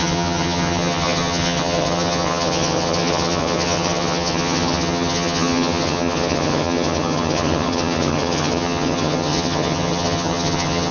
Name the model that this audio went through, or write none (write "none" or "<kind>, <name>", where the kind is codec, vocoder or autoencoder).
vocoder, HiFi-GAN